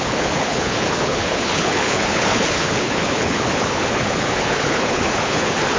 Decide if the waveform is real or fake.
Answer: fake